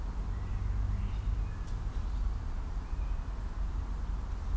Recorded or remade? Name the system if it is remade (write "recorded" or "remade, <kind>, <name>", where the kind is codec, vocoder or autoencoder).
recorded